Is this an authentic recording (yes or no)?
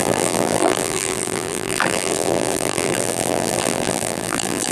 no